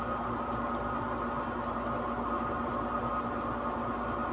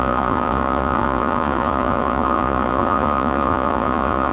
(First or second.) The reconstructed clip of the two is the second